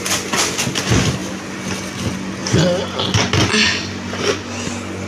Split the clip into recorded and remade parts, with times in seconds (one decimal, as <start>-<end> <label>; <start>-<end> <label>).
0.0-5.1 recorded